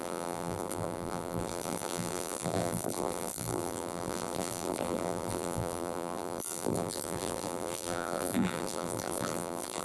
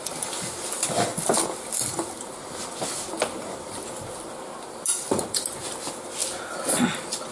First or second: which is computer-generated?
first